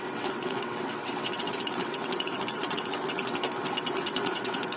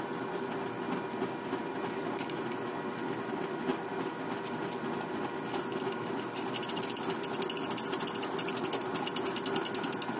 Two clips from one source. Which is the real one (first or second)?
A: second